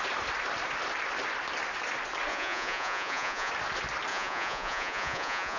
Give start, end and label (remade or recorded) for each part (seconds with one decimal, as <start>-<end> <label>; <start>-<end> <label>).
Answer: 0.0-2.3 recorded; 2.3-3.5 remade; 3.5-4.1 recorded; 4.1-5.6 remade